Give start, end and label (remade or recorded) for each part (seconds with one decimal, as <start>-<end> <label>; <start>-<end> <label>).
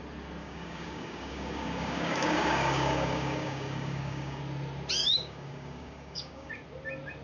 0.0-0.4 recorded; 0.4-4.4 remade; 4.4-5.0 recorded; 5.0-6.5 remade; 6.5-7.2 recorded